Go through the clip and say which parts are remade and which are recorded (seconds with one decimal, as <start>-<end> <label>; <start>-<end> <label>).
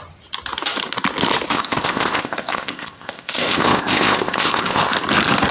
0.0-1.5 recorded; 1.5-4.8 remade; 4.8-5.5 recorded